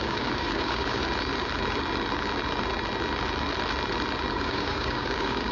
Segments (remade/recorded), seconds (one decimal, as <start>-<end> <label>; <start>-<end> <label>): 0.0-1.0 remade; 1.0-4.3 recorded; 4.3-5.5 remade